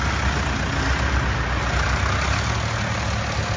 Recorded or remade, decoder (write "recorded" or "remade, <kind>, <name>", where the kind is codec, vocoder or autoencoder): recorded